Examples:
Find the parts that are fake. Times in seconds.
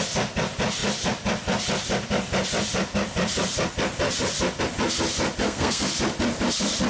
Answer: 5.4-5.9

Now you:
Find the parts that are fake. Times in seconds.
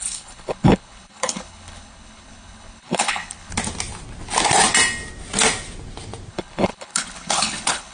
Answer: 0.0-3.5; 6.3-7.9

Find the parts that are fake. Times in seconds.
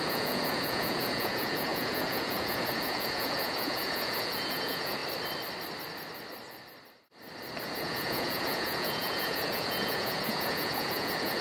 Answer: 0.0-5.0; 7.6-11.4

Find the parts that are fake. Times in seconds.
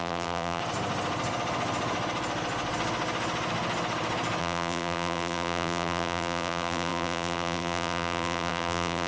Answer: 0.0-0.6; 4.4-9.1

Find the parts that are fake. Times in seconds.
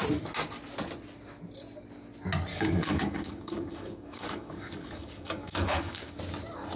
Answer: 2.5-6.2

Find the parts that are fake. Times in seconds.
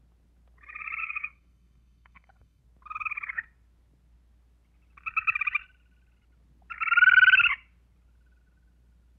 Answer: 1.0-2.6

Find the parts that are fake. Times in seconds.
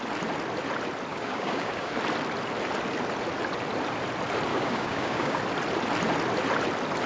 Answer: 1.1-1.9; 4.5-5.4